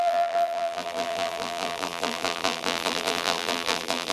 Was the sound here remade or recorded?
remade